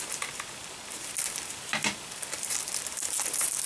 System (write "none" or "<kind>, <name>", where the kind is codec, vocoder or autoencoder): none